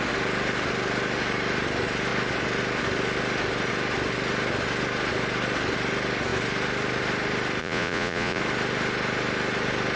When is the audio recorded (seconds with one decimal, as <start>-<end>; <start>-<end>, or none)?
0.0-7.6; 8.4-10.0